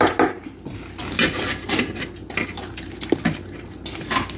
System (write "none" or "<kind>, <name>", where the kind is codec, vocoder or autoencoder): none